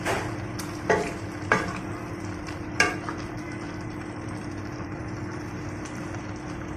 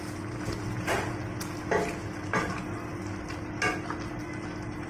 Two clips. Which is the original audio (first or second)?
second